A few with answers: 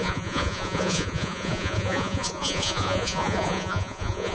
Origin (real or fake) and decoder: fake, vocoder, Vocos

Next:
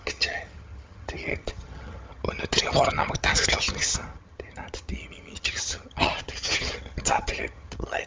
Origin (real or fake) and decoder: fake, vocoder, HiFi-GAN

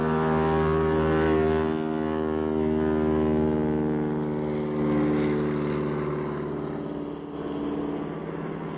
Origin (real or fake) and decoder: real